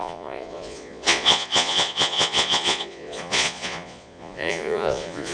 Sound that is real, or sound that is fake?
fake